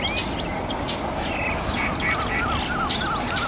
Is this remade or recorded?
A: recorded